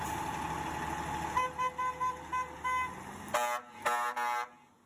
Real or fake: real